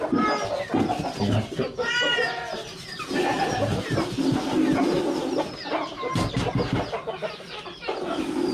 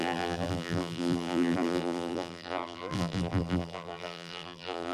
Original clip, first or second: first